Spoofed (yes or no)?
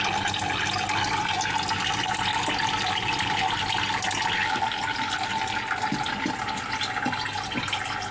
no